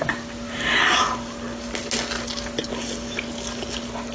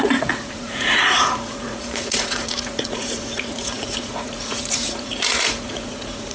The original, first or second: first